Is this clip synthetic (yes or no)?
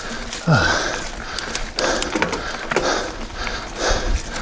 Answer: no